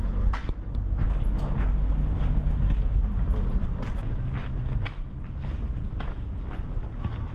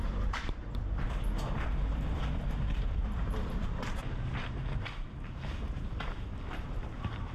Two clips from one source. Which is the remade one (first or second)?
second